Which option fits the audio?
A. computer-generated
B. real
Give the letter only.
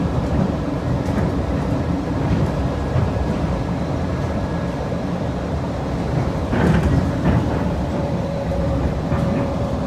A